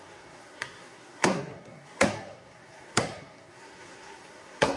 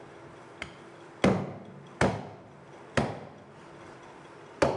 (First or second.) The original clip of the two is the second